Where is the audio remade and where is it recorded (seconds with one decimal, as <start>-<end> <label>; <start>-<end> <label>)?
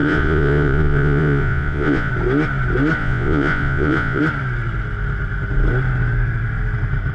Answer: 0.0-2.1 remade; 2.1-3.0 recorded; 3.0-4.2 remade; 4.2-7.1 recorded